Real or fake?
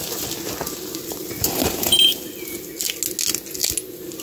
real